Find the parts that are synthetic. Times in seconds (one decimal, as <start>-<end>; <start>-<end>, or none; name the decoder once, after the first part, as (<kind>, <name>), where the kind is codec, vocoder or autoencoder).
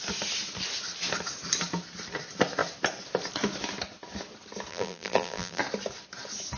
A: 4.7-5.6 (vocoder, BigVGAN v2)